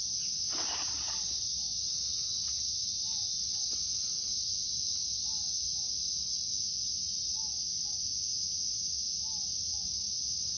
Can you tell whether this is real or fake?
real